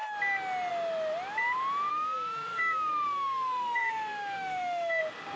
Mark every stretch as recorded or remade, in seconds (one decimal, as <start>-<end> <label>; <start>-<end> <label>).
0.0-1.9 recorded; 1.9-5.0 remade; 5.0-5.4 recorded